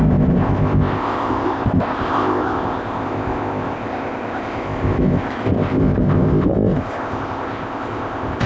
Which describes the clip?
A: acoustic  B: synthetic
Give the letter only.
B